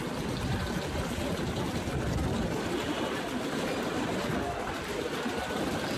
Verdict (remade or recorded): recorded